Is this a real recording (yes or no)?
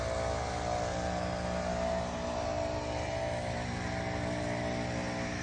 yes